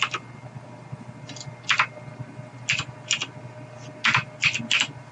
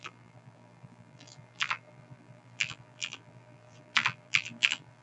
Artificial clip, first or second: second